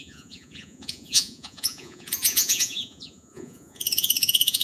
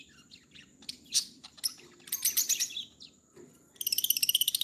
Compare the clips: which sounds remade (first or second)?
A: first